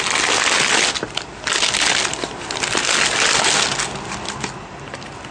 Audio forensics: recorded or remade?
recorded